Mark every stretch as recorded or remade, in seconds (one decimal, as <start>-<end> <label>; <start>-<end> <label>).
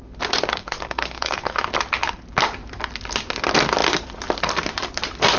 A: 0.0-0.6 recorded; 0.6-1.6 remade; 1.6-5.4 recorded